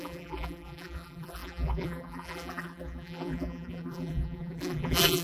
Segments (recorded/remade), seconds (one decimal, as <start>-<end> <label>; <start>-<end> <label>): 0.0-5.2 remade